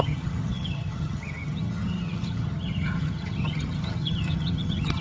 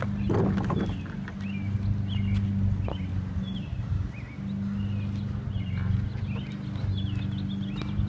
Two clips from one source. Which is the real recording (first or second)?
second